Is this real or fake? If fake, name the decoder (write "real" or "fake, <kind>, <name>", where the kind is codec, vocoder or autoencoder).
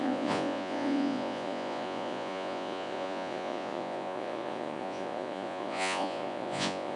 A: fake, vocoder, Vocos